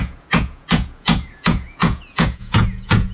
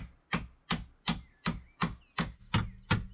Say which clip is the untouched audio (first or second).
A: second